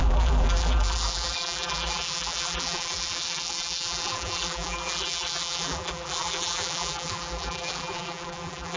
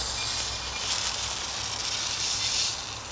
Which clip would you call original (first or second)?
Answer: second